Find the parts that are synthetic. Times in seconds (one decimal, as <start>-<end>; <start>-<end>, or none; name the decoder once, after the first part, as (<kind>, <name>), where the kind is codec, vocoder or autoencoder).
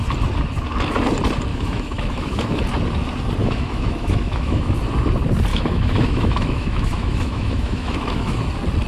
1.5-2.6 (autoencoder, DAC-VAE); 3.4-4.7; 5.5-8.4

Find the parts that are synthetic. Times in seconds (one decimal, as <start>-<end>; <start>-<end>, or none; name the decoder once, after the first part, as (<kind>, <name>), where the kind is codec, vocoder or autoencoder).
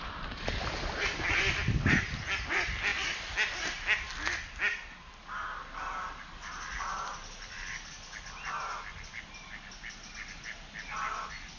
none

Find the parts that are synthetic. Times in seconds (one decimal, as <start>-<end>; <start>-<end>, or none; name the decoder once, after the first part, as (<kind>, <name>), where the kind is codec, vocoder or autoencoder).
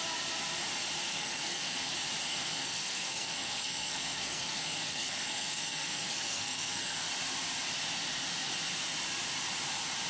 1.1-1.9 (codec, SNAC); 2.3-7.1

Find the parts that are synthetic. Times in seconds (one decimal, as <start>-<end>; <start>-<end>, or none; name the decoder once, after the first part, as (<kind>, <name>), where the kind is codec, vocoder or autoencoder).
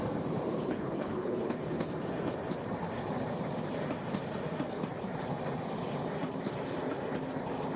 0.5-1.9 (codec, HILCodec)